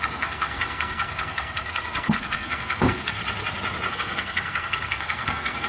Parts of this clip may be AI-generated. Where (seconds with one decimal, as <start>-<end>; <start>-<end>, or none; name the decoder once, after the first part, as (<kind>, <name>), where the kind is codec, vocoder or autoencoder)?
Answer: 0.0-3.2 (codec, SNAC); 3.9-5.7